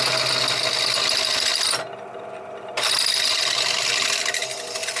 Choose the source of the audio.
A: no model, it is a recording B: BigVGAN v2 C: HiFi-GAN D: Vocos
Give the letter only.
A